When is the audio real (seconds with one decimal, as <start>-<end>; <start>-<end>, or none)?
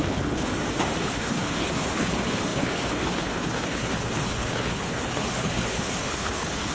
0.5-1.0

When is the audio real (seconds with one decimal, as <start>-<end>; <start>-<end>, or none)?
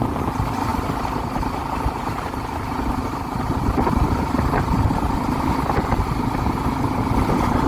0.0-0.7; 4.4-7.7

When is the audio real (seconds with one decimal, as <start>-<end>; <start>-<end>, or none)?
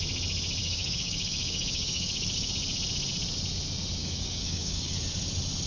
0.0-0.6; 2.5-4.0; 4.9-5.7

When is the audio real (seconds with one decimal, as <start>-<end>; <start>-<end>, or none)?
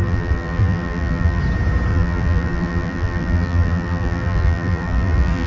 1.4-1.9